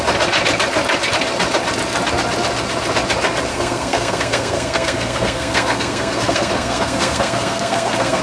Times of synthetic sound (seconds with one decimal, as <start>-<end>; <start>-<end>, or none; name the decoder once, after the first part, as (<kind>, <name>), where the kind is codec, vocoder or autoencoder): 3.5-8.2 (codec, SNAC)